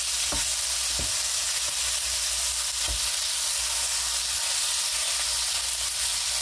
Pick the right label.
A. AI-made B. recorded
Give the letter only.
B